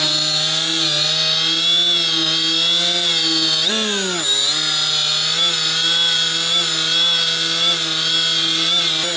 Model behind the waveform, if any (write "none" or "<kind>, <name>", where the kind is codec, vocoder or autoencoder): none